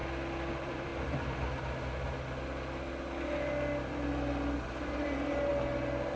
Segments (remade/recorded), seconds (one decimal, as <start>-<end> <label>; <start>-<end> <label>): 0.0-0.5 recorded; 0.5-0.9 remade; 0.9-4.6 recorded; 4.6-5.5 remade; 5.5-6.2 recorded